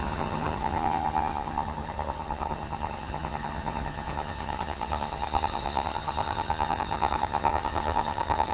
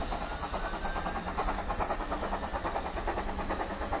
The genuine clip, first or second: second